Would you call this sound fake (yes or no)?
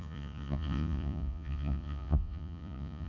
yes